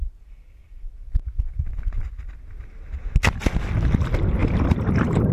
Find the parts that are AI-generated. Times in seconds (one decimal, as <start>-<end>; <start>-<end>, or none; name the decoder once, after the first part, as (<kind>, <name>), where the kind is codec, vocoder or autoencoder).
none